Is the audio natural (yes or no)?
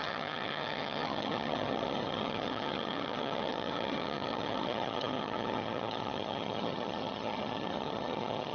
no